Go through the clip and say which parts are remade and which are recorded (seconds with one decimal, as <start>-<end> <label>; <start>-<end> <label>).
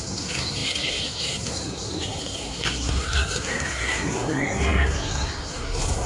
0.0-6.1 remade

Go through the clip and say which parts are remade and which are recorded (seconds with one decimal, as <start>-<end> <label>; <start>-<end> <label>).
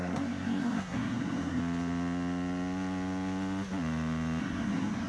0.0-1.6 remade; 1.6-4.4 recorded; 4.4-5.1 remade